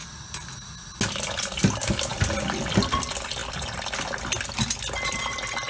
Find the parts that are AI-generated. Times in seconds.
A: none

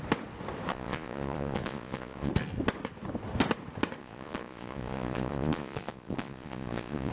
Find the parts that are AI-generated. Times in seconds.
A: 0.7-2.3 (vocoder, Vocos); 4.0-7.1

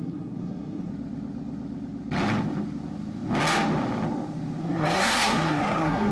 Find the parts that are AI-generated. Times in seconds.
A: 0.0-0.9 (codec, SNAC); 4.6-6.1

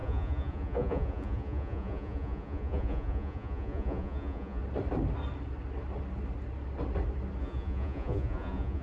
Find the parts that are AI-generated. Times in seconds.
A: 0.0-4.6 (vocoder, Vocos); 7.4-8.8

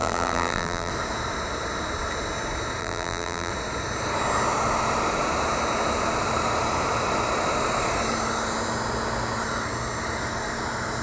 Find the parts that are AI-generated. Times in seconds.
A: 0.0-0.9 (vocoder, BigVGAN v2); 2.8-3.5

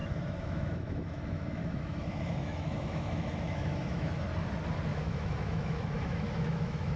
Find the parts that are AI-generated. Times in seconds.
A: 0.0-4.2 (autoencoder, DAC-VAE); 4.9-7.0